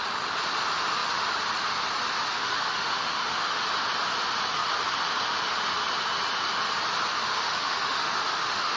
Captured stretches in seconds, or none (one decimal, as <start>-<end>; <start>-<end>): 0.0-2.3; 3.6-7.1